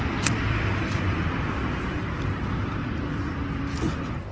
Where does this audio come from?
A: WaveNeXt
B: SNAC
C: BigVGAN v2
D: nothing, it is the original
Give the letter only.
C